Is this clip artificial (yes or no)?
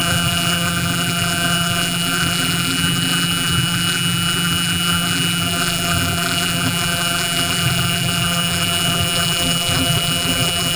yes